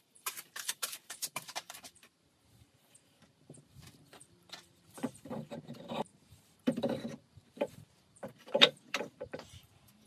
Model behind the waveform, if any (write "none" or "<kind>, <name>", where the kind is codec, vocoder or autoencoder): vocoder, BigVGAN v2